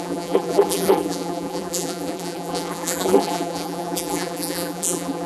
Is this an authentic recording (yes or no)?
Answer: no